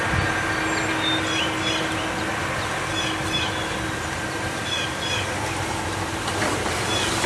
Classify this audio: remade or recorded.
recorded